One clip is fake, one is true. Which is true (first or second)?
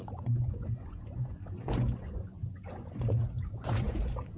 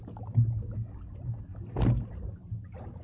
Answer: second